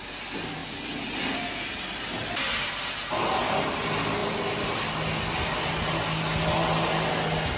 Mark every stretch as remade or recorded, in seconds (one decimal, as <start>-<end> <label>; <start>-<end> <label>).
0.0-7.6 recorded

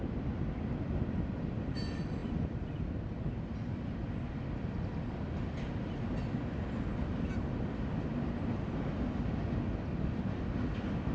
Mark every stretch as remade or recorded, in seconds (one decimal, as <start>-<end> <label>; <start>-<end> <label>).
0.0-11.1 recorded